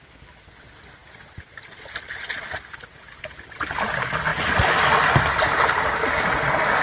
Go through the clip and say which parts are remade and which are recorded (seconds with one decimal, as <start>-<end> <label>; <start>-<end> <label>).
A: 0.0-6.8 recorded